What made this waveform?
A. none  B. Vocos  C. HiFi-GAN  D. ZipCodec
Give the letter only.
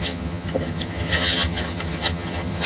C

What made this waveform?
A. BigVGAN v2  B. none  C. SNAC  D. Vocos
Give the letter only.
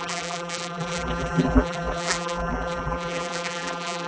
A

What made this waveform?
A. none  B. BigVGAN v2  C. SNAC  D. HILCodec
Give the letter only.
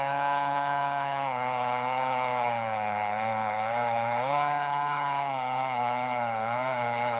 D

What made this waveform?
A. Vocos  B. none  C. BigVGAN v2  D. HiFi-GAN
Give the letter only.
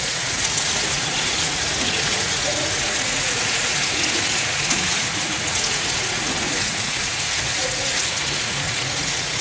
A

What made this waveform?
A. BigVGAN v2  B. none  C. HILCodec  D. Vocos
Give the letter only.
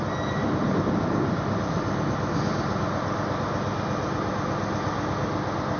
B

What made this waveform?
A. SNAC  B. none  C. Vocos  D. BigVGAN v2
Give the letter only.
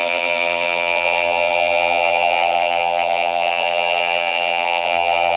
D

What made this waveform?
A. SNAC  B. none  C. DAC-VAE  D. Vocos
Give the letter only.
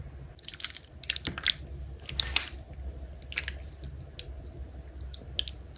B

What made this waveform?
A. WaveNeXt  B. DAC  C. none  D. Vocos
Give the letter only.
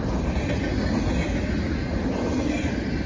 C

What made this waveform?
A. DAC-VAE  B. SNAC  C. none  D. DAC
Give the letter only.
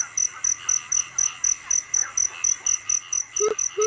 C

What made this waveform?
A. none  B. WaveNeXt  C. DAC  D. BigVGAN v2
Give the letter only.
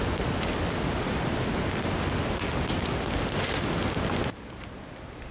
A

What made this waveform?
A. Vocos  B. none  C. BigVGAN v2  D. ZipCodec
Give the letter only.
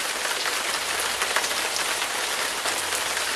B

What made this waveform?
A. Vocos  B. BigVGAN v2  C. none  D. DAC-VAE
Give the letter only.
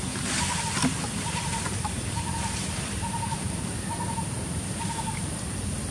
C